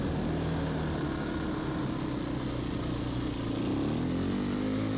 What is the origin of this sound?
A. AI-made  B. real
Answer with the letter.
B